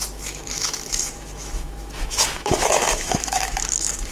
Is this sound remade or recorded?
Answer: remade